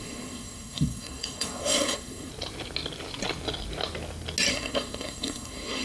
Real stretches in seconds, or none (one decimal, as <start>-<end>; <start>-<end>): 2.3-4.5